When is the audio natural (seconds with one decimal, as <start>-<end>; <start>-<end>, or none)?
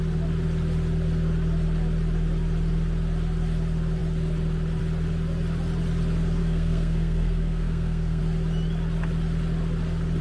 0.0-6.4; 8.2-10.2